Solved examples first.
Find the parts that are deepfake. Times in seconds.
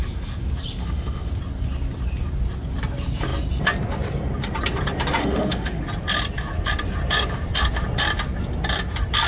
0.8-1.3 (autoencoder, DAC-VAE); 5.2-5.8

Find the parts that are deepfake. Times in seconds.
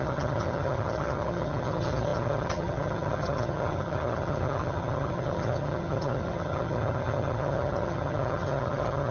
0.0-9.1 (vocoder, HiFi-GAN)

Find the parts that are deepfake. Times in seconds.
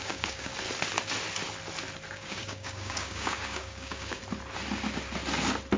0.0-0.5 (codec, DAC); 2.1-4.2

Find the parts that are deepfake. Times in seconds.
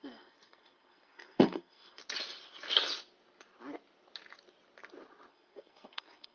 0.0-2.0 (codec, SNAC); 5.3-6.3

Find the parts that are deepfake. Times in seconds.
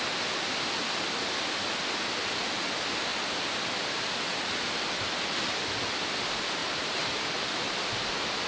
6.6-7.3 (vocoder, BigVGAN v2)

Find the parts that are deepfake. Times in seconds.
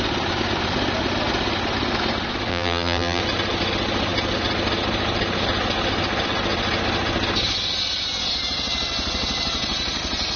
2.5-3.2 (vocoder, BigVGAN v2)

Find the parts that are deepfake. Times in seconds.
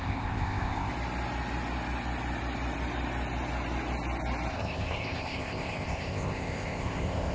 0.0-0.9 (codec, ZipCodec); 4.5-7.3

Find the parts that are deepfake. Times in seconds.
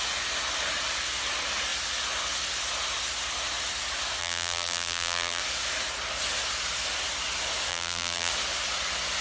4.2-5.4 (vocoder, BigVGAN v2); 7.7-8.3